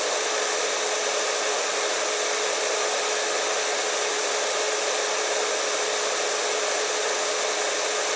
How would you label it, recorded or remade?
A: recorded